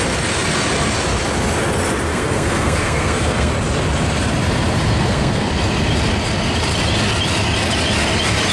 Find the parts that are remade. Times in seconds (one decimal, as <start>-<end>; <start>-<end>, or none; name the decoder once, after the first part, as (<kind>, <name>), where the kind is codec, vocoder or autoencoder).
2.1-3.5 (codec, SNAC); 5.0-5.5